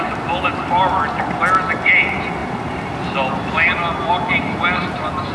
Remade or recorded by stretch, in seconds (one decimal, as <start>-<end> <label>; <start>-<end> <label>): 0.0-5.3 recorded